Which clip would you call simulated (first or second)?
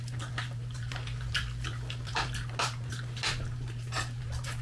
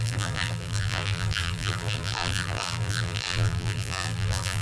second